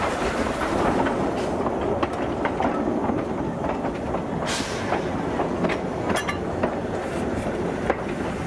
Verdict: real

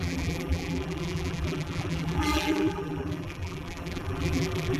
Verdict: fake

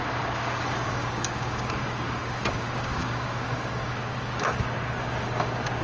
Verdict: fake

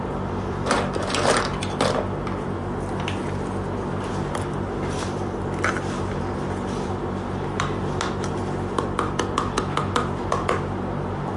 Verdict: real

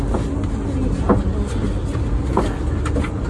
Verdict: real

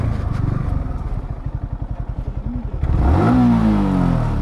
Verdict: real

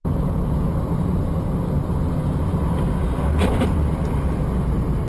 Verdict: real